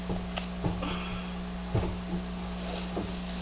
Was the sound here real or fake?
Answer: real